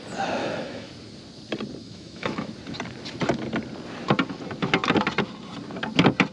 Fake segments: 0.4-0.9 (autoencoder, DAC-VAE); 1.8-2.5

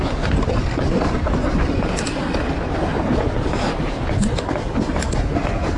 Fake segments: none